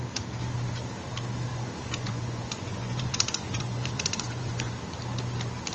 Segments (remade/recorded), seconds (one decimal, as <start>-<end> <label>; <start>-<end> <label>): 0.0-1.5 recorded; 1.5-4.7 remade; 4.7-5.7 recorded